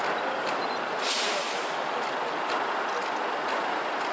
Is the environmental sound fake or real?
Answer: real